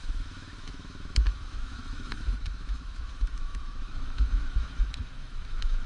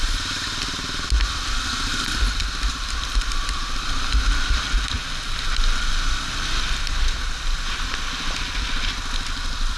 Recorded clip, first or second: second